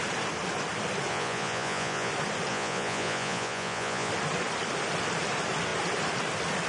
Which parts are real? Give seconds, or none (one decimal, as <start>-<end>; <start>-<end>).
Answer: 0.0-1.1; 2.1-2.5; 4.1-6.7